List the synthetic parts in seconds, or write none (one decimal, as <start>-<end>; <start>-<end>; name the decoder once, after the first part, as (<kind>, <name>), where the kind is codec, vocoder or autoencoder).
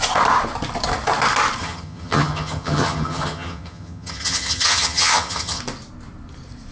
1.6-5.6 (vocoder, HiFi-GAN)